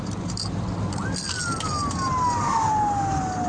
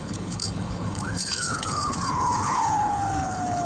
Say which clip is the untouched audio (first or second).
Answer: first